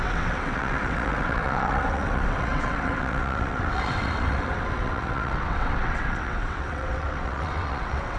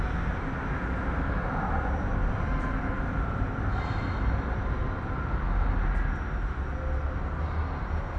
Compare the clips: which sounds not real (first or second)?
first